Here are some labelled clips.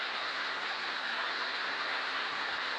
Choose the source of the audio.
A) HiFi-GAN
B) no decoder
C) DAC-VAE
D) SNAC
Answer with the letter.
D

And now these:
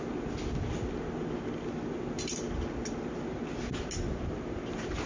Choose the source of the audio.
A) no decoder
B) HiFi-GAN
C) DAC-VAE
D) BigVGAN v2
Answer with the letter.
A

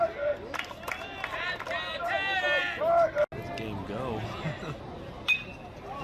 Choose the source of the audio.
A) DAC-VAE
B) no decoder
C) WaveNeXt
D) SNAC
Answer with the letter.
B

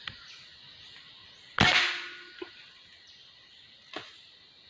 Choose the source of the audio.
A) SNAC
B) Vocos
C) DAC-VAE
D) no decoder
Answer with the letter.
D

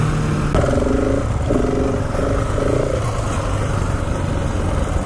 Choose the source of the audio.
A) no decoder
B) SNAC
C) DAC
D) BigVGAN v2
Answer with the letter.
A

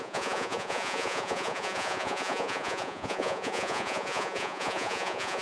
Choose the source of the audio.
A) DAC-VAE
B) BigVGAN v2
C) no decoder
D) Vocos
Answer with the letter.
D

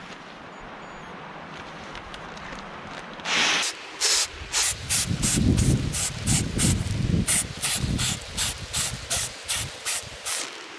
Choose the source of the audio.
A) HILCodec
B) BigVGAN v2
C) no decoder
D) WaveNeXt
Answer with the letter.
C